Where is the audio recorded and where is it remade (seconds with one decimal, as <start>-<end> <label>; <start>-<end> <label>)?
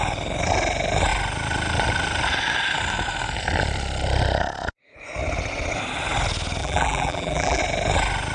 0.0-6.6 recorded; 6.6-7.6 remade; 7.6-8.3 recorded